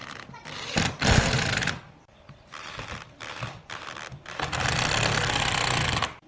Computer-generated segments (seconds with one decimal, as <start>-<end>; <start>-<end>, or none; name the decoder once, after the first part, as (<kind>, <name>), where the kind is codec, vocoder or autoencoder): 0.0-2.3 (vocoder, BigVGAN v2)